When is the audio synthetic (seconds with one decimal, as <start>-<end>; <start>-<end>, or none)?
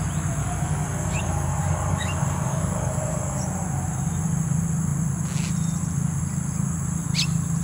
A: 0.4-3.4